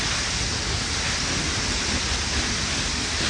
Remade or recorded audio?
recorded